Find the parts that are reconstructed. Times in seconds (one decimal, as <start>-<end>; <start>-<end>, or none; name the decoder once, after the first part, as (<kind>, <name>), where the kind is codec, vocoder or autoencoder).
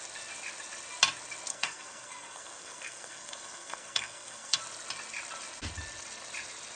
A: 1.5-4.6 (codec, SNAC)